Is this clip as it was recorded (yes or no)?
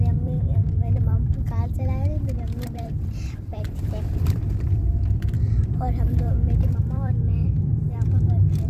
no